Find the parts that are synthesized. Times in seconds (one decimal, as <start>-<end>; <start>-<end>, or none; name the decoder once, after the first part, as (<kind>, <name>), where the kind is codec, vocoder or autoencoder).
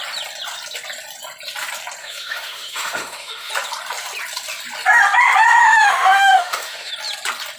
2.0-3.5 (autoencoder, DAC-VAE); 5.6-6.9